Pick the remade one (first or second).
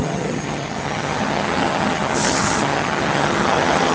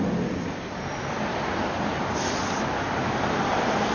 first